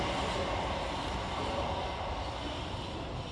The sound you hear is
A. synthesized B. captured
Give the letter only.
B